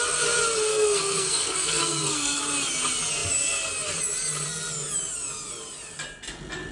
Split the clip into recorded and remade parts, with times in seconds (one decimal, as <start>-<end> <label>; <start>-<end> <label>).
0.0-0.7 recorded; 0.7-2.4 remade; 2.4-6.7 recorded